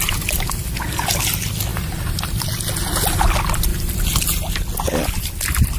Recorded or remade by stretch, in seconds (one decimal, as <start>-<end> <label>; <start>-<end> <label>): 0.0-5.8 recorded